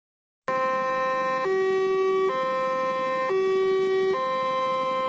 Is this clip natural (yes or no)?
yes